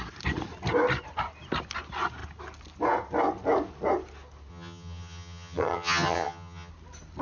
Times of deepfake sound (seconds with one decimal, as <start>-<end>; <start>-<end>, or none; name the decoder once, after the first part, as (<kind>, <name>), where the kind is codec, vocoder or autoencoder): 4.5-6.7 (vocoder, HiFi-GAN)